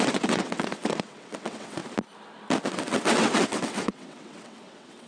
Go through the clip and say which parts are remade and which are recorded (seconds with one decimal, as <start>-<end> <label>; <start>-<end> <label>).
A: 0.0-1.8 remade; 1.8-2.7 recorded; 2.7-5.1 remade